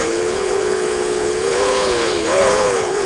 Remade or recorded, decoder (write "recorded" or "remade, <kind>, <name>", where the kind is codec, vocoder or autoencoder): remade, codec, HILCodec